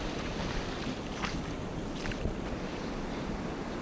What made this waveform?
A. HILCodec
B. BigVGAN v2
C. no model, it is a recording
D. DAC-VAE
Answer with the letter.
C